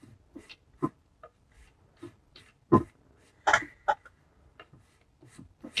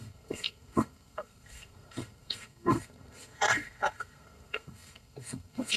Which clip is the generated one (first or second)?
second